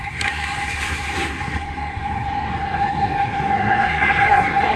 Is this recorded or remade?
remade